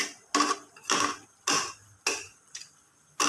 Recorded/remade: recorded